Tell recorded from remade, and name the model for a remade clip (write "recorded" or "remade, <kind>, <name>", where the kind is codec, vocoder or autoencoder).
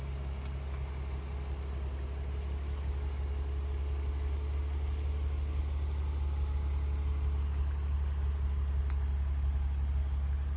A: recorded